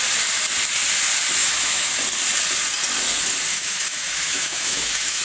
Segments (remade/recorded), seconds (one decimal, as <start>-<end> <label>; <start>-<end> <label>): 0.0-1.4 recorded; 1.4-1.9 remade; 1.9-3.5 recorded; 3.5-5.2 remade